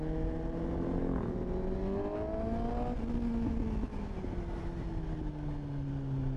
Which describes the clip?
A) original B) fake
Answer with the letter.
A